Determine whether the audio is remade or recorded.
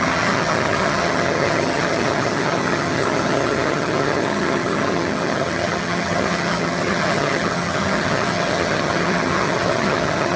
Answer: remade